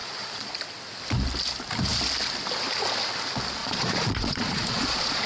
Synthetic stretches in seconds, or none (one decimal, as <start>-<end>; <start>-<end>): 0.0-0.5; 3.6-5.3

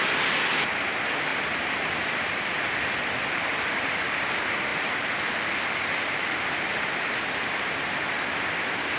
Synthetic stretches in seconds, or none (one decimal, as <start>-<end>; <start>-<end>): 0.8-9.0

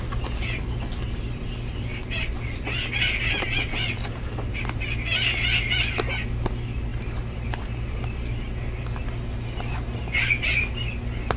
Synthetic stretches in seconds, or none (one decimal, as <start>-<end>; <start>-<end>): none

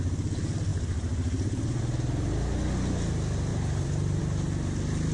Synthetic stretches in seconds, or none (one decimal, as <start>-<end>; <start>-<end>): 0.7-1.8; 3.5-4.2

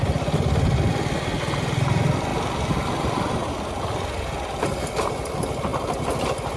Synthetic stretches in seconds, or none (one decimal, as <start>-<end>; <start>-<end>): none